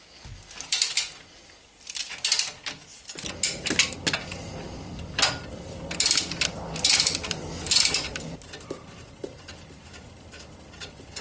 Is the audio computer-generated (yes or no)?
no